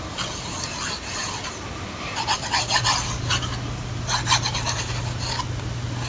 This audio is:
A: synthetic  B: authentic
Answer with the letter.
B